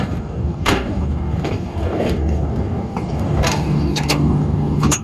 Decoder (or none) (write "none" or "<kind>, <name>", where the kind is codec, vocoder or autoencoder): codec, DAC